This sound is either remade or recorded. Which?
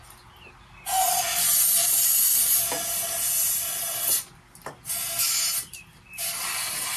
recorded